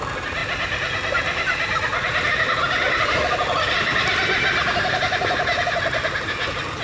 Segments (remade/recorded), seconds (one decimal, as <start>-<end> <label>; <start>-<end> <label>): 0.0-6.8 recorded